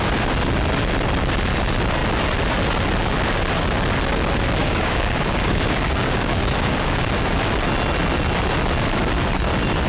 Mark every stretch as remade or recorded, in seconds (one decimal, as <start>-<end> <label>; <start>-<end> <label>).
0.0-4.6 recorded; 4.6-7.4 remade; 7.4-9.9 recorded

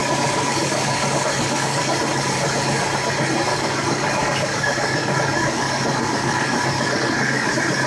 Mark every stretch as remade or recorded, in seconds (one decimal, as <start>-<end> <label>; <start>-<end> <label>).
0.0-2.0 remade; 2.0-3.5 recorded; 3.5-7.5 remade; 7.5-7.9 recorded

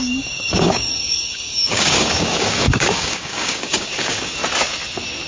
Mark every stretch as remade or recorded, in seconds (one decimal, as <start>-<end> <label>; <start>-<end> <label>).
0.0-4.4 remade; 4.4-5.3 recorded

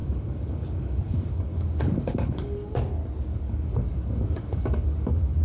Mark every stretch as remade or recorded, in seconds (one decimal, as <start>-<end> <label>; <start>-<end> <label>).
0.0-2.8 remade; 2.8-3.3 recorded; 3.3-5.4 remade

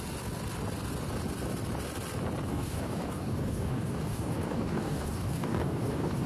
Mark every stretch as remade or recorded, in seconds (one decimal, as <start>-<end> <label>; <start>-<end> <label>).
0.0-2.5 recorded; 2.5-6.3 remade